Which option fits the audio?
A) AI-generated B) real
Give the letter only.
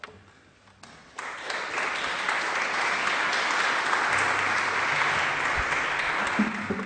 B